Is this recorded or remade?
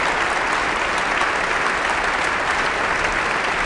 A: recorded